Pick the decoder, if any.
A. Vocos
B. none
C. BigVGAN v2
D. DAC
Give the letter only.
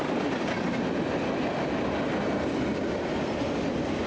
B